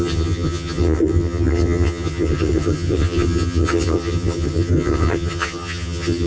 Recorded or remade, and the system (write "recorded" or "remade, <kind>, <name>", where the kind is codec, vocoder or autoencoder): remade, vocoder, HiFi-GAN